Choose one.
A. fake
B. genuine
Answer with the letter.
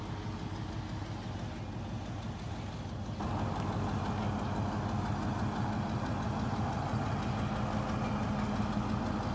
B